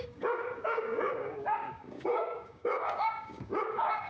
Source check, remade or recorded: remade